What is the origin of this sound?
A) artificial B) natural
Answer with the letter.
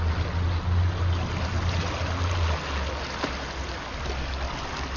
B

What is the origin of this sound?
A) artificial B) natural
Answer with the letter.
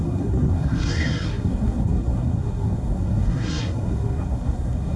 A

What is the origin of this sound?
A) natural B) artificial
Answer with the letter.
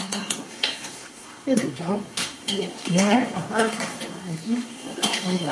B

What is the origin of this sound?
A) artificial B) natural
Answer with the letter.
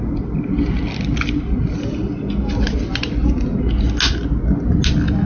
B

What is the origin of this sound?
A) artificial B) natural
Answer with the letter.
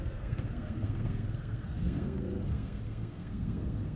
A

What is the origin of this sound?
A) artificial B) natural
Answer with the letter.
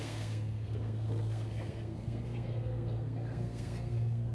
A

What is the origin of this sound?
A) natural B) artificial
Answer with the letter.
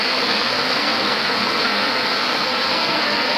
B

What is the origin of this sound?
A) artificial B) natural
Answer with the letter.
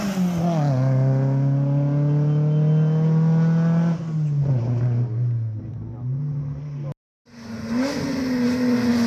B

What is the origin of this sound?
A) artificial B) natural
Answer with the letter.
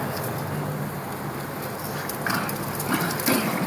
B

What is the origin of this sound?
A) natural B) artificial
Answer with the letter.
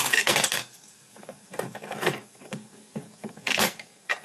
B